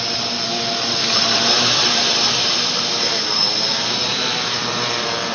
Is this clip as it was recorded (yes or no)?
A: no